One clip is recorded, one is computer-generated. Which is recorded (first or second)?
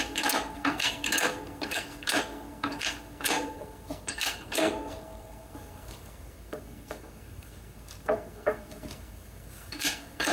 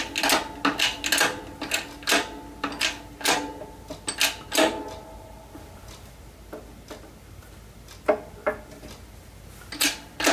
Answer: second